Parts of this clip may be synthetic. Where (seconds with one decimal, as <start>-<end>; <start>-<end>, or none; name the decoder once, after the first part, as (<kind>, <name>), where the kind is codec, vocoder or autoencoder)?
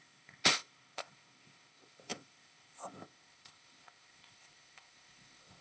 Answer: 0.0-5.6 (codec, ZipCodec)